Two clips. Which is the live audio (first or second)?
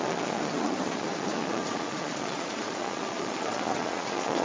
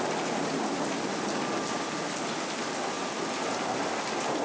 second